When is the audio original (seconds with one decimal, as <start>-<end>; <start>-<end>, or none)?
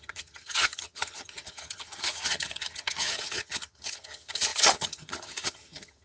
none